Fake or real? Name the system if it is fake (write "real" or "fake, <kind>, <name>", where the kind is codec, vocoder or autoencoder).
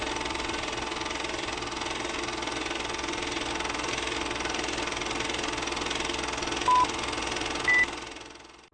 real